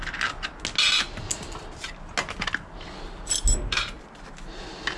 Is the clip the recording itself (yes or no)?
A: yes